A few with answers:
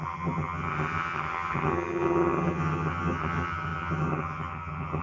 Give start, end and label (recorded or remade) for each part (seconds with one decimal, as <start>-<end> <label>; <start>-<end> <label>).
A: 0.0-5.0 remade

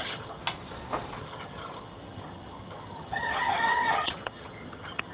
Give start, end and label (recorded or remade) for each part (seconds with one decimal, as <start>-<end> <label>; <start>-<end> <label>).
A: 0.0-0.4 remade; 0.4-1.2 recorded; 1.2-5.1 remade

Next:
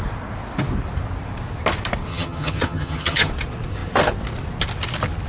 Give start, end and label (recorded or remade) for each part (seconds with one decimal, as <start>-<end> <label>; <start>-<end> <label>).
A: 0.0-2.1 recorded; 2.1-3.3 remade; 3.3-5.3 recorded

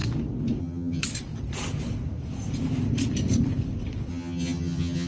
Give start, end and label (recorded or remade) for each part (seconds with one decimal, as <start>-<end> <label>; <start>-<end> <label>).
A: 0.0-0.6 recorded; 0.6-1.0 remade; 1.0-4.1 recorded; 4.1-5.1 remade